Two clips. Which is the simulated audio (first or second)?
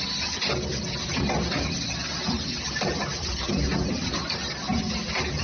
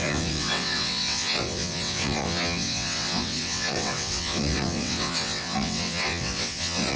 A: second